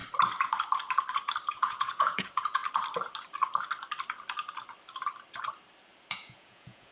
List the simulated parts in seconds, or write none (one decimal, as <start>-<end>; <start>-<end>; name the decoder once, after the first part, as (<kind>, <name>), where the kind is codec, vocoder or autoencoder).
1.5-2.6 (vocoder, Vocos); 6.1-6.9